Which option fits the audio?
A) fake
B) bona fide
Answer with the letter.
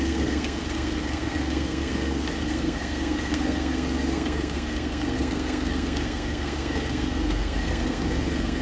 A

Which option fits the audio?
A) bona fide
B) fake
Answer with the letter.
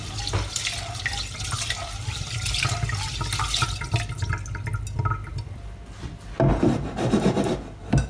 A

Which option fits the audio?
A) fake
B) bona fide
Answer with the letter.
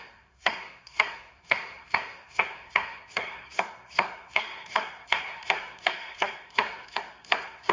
A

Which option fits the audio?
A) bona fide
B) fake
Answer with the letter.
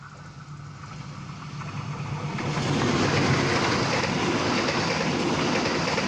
A